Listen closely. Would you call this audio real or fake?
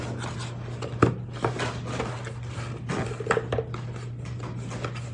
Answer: real